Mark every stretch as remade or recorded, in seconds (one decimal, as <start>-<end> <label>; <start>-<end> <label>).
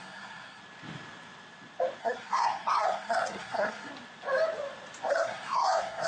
0.0-0.6 remade; 0.6-2.0 recorded; 2.0-3.9 remade; 3.9-5.1 recorded; 5.1-6.1 remade